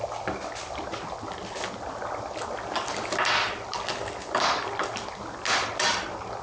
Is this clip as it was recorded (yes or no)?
yes